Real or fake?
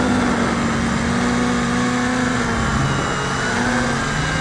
real